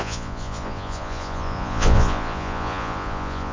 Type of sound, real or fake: fake